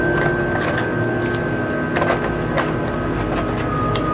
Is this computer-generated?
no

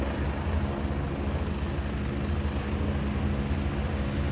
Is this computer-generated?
no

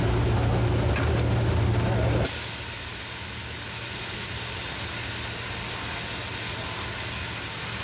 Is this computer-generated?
no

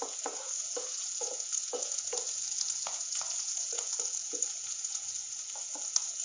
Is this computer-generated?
yes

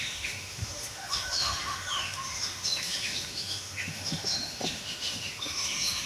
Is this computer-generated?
yes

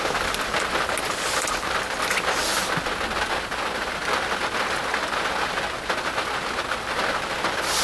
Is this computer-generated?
no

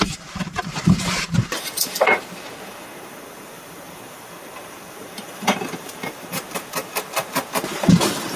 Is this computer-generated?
yes